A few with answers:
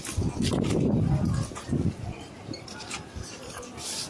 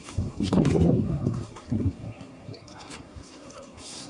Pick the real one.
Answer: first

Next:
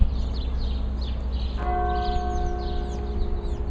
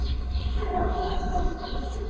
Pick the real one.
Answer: first